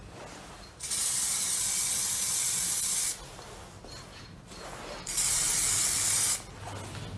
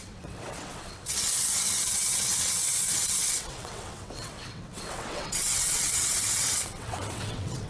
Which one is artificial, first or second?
second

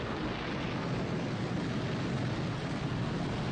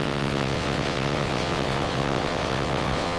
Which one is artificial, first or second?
second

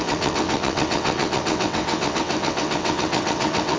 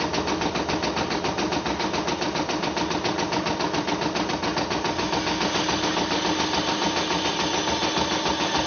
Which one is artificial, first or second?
first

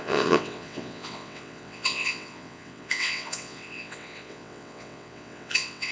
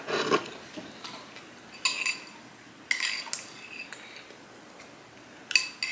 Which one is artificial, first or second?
first